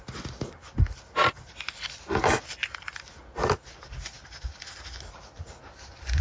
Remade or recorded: recorded